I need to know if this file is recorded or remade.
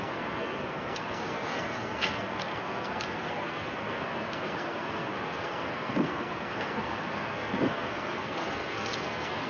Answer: remade